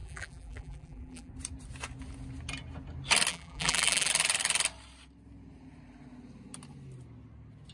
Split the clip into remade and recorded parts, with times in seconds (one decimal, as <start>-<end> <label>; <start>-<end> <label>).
0.0-1.3 remade; 1.3-3.3 recorded; 3.3-4.1 remade; 4.1-7.7 recorded